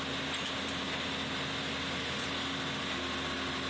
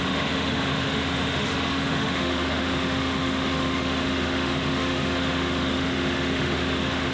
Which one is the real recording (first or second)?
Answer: first